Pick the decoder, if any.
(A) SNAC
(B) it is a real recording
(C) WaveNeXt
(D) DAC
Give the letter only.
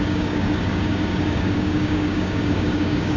D